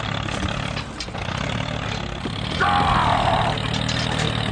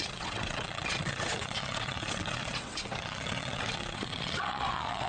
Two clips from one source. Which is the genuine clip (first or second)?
first